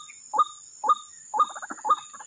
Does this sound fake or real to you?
real